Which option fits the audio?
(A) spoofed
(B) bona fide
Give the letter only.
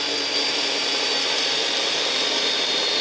B